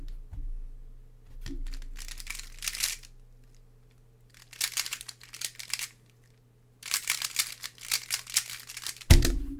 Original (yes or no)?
yes